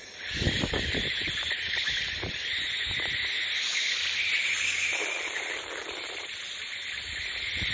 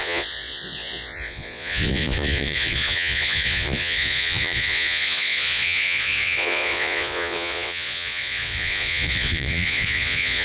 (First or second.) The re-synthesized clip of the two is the second